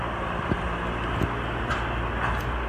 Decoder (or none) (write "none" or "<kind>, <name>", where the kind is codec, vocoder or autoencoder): none